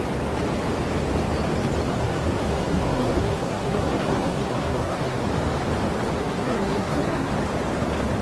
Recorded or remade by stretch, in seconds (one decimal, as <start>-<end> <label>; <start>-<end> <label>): 0.0-1.9 recorded; 1.9-5.2 remade; 5.2-6.2 recorded; 6.2-7.3 remade; 7.3-8.2 recorded